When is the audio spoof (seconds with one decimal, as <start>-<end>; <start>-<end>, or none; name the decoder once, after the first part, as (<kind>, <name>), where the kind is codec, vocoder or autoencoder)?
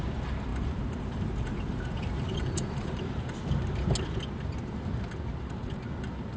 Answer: 0.5-3.0 (vocoder, BigVGAN v2)